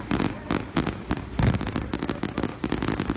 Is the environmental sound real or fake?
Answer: real